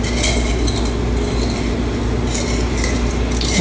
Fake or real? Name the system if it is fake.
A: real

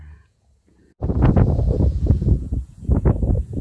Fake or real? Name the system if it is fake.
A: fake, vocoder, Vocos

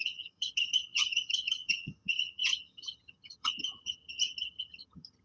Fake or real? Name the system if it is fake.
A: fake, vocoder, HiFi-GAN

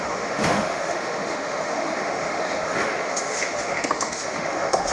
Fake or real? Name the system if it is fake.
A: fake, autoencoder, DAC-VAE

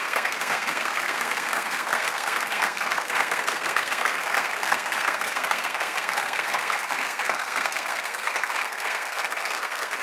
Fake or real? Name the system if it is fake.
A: fake, codec, SNAC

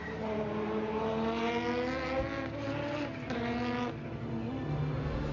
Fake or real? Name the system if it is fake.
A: real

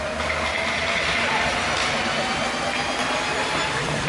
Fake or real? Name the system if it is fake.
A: real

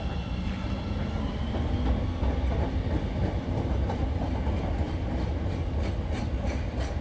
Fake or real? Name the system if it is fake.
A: real